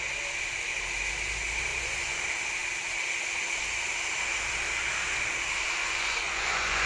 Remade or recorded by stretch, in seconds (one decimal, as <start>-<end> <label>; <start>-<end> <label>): 0.0-1.7 recorded; 1.7-2.2 remade; 2.2-5.8 recorded; 5.8-6.9 remade